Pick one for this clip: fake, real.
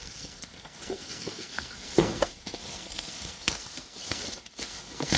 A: fake